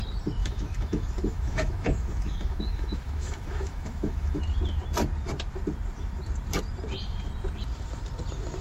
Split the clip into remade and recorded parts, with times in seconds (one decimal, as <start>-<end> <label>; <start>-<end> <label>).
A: 0.0-0.4 recorded; 0.4-4.4 remade; 4.4-8.6 recorded